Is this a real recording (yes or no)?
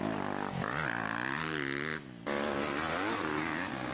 yes